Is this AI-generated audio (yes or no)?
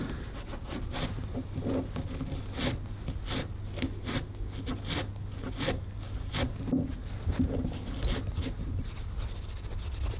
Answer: no